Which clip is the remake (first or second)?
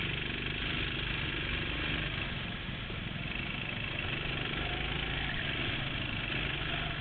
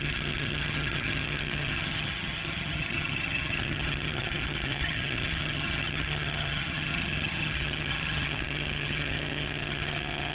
second